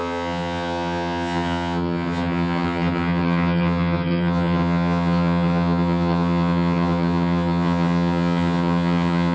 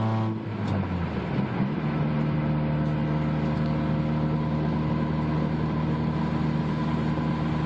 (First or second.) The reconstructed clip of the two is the first